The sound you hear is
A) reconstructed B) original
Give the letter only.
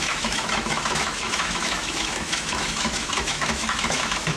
A